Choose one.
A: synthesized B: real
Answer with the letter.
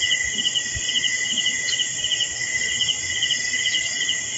B